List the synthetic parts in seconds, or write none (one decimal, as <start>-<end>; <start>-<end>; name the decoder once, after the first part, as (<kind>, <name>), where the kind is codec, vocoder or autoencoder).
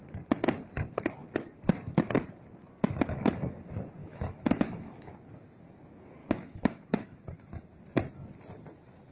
4.0-5.1 (autoencoder, DAC-VAE); 6.2-7.2